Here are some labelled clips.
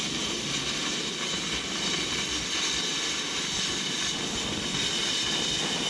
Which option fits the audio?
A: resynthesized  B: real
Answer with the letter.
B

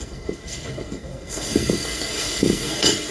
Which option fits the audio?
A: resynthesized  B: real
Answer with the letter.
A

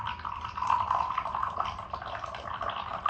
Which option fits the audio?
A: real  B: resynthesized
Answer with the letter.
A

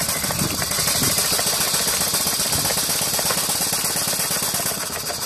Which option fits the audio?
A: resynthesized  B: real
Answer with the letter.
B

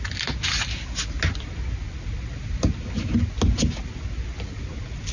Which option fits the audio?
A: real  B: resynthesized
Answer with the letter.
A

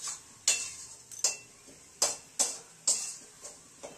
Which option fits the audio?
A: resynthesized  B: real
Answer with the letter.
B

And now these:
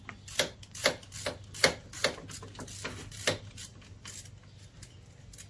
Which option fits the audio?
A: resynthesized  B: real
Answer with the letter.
B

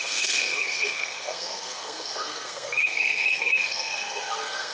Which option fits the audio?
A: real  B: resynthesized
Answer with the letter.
B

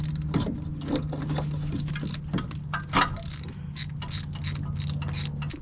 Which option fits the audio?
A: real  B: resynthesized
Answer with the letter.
A